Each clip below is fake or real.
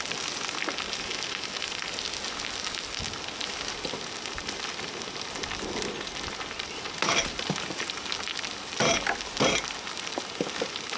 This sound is real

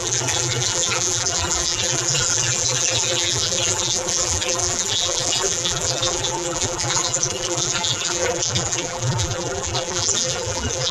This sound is fake